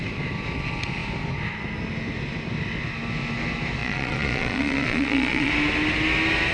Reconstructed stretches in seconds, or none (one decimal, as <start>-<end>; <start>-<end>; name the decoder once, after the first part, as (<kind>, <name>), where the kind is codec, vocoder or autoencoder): 3.8-5.5 (vocoder, Vocos)